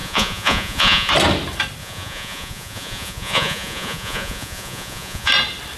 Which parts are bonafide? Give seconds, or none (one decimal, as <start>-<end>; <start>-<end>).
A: 1.1-1.8; 5.3-5.8